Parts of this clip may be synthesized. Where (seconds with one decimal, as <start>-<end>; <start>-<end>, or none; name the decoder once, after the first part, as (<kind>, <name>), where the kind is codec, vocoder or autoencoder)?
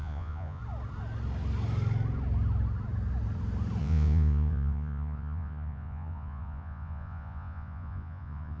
0.0-0.6 (vocoder, Vocos); 3.8-8.6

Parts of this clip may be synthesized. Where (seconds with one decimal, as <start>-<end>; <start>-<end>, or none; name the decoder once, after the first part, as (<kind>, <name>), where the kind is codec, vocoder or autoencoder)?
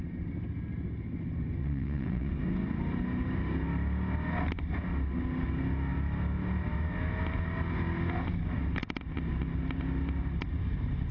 1.6-2.3 (vocoder, WaveNeXt)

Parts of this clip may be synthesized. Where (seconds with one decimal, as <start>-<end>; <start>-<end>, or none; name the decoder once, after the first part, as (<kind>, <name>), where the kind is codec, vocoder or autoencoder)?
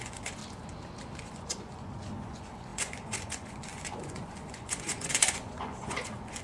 0.0-0.4 (vocoder, Vocos); 1.2-6.4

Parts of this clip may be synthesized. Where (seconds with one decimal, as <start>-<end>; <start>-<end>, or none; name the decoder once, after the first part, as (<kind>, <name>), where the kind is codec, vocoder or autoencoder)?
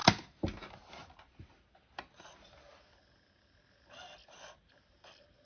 none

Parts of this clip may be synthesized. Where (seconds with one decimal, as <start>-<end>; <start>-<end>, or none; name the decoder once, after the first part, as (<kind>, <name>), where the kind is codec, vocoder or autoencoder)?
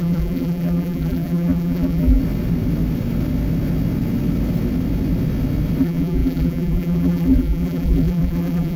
0.0-2.2 (vocoder, BigVGAN v2); 5.8-8.8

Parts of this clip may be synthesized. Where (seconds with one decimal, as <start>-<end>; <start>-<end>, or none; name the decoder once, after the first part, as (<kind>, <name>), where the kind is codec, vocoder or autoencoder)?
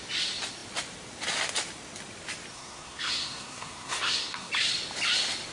2.5-4.5 (codec, SNAC)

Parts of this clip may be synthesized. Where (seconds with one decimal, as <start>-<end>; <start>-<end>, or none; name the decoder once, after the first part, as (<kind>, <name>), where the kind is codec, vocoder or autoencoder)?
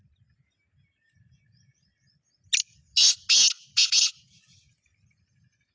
3.6-4.1 (vocoder, BigVGAN v2)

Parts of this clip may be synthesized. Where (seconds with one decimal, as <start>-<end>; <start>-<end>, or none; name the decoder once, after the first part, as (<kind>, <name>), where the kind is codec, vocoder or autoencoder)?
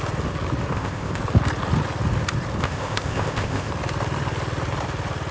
0.7-1.2 (codec, ZipCodec); 2.6-3.7